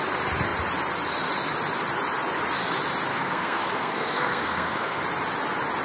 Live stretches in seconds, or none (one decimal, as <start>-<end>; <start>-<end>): 0.0-3.1; 5.0-5.8